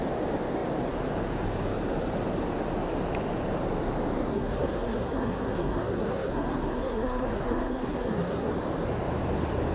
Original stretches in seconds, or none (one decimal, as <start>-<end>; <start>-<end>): 0.0-4.3; 8.5-9.7